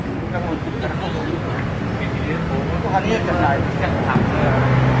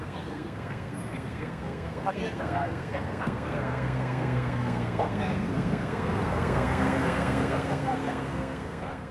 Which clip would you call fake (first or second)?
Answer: second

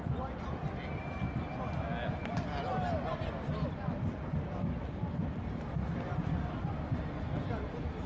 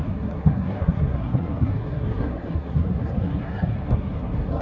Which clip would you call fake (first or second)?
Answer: second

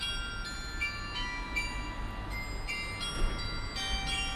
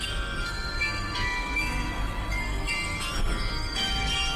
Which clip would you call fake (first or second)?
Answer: second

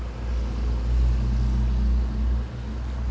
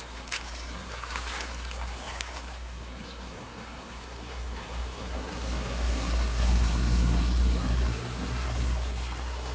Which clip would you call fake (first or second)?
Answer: second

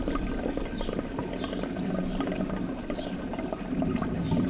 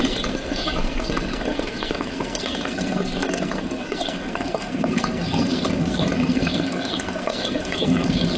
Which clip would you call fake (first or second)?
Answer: second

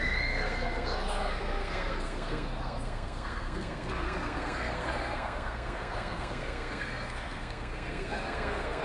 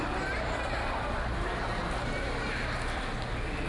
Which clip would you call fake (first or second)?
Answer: first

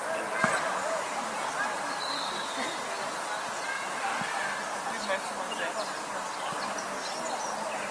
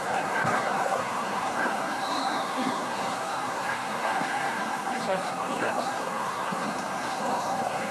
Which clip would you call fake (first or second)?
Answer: second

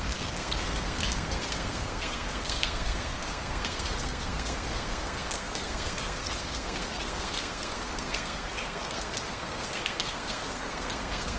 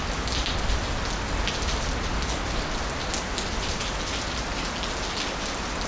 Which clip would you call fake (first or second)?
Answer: first